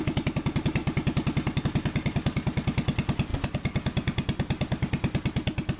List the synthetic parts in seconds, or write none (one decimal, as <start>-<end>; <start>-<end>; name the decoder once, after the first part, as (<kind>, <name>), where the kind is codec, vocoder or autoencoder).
none